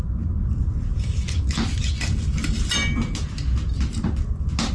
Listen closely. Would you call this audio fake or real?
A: real